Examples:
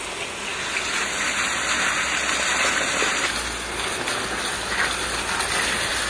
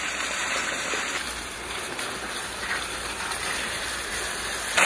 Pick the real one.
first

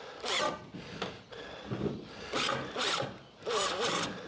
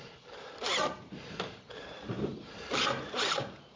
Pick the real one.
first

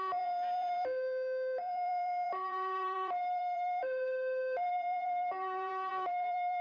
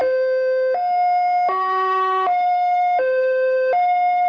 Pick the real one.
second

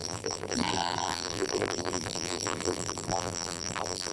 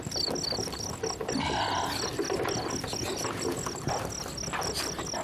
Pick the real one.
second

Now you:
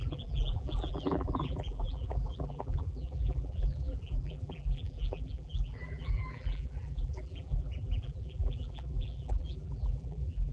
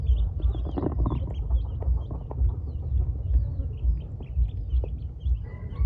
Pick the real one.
second